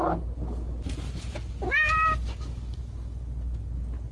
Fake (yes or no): no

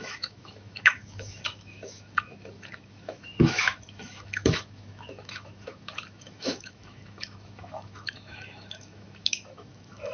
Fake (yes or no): yes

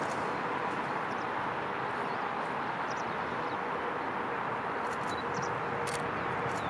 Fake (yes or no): no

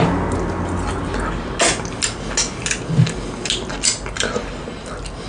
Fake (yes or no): no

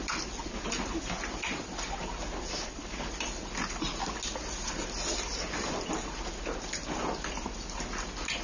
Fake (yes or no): no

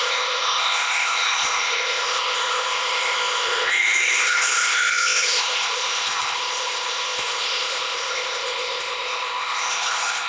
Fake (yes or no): yes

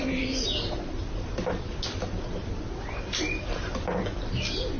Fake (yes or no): no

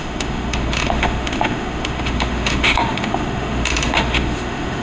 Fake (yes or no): yes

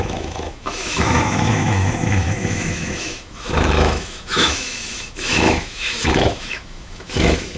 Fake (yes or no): yes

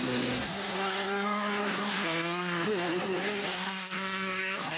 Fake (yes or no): yes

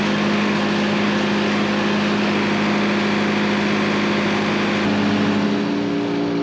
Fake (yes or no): no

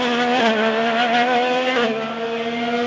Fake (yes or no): no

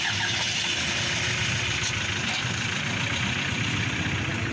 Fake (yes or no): no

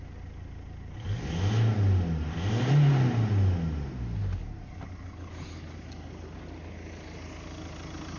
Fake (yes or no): no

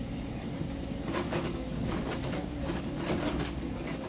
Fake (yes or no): yes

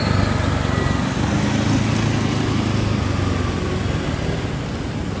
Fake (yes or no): no